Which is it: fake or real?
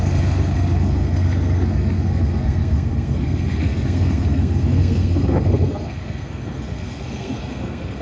fake